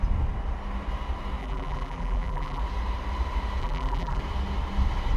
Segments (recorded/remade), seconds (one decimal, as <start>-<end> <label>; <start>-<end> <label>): 0.0-1.4 recorded; 1.4-2.6 remade; 2.6-3.6 recorded; 3.6-4.2 remade; 4.2-5.2 recorded